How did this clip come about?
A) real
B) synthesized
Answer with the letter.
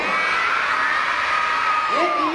A